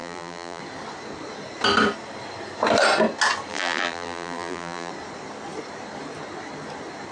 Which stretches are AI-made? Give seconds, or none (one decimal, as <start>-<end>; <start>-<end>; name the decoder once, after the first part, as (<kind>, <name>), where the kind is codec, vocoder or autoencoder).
0.0-0.6 (vocoder, BigVGAN v2); 3.5-4.9